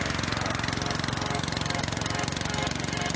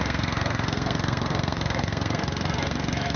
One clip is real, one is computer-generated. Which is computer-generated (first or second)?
second